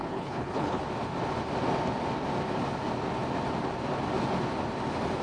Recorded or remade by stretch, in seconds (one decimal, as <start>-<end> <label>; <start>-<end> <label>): 0.0-0.8 remade; 0.8-5.2 recorded